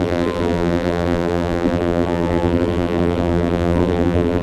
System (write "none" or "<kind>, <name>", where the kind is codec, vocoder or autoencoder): vocoder, BigVGAN v2